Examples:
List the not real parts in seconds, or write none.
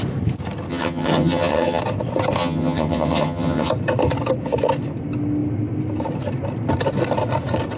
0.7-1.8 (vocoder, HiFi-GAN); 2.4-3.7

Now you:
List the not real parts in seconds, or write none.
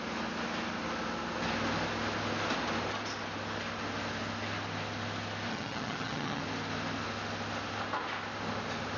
5.5-6.4 (vocoder, HiFi-GAN)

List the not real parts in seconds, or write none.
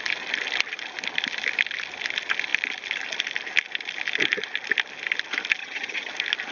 5.6-6.1 (vocoder, HiFi-GAN)